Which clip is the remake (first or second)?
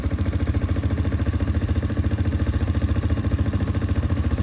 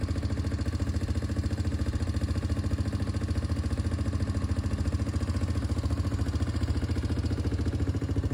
first